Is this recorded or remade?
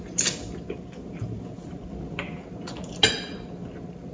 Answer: recorded